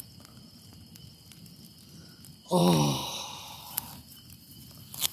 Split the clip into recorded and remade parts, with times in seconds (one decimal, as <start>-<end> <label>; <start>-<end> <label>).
0.0-5.1 recorded

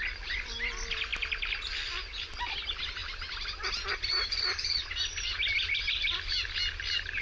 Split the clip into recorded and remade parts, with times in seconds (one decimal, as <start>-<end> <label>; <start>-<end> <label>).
0.0-3.0 recorded; 3.0-6.3 remade; 6.3-7.2 recorded

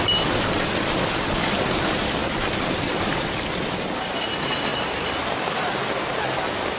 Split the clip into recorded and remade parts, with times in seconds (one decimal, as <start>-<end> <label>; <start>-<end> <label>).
0.0-2.2 recorded; 2.2-3.9 remade; 3.9-4.7 recorded; 4.7-5.5 remade; 5.5-6.8 recorded

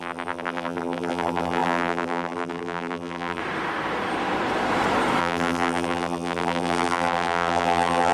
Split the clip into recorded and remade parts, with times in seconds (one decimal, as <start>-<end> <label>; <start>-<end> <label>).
0.0-3.4 remade; 3.4-5.2 recorded; 5.2-8.1 remade

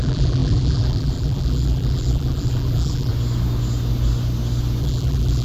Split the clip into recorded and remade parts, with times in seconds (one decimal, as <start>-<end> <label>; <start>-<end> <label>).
0.0-3.1 remade; 3.1-4.8 recorded; 4.8-5.4 remade

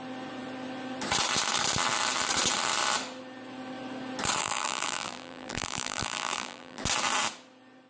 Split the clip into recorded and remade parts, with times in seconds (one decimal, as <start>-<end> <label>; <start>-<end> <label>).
0.0-4.4 recorded; 4.4-6.8 remade; 6.8-7.9 recorded